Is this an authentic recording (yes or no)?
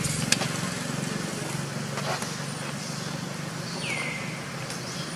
yes